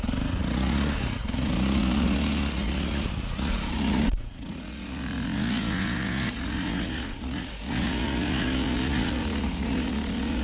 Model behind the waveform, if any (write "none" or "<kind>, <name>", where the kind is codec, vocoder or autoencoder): vocoder, Vocos